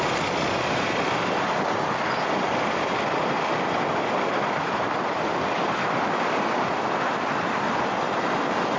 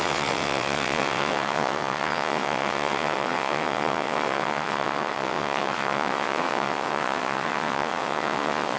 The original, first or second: first